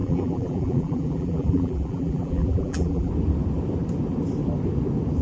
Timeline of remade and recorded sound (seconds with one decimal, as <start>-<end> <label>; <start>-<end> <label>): 0.0-3.1 remade; 3.1-5.2 recorded